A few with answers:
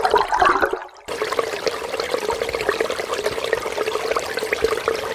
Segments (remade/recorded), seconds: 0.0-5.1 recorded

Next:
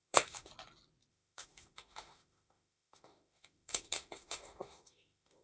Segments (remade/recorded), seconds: 0.0-0.5 remade; 0.5-1.1 recorded; 1.1-5.4 remade

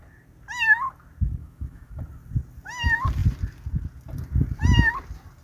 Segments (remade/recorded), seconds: 0.0-1.4 recorded; 1.4-2.0 remade; 2.0-5.4 recorded